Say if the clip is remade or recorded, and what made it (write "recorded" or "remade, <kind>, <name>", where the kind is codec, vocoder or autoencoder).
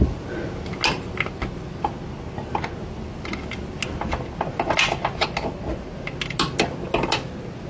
recorded